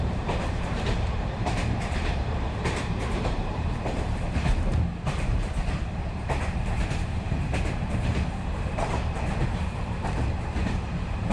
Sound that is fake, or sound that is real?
fake